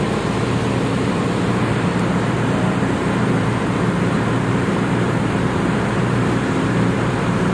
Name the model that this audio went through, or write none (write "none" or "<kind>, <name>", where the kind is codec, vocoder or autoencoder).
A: vocoder, BigVGAN v2